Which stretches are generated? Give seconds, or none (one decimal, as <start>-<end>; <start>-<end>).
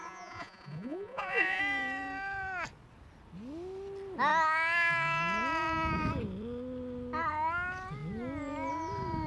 0.0-1.6